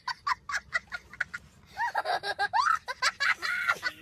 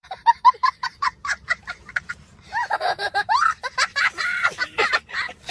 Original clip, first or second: first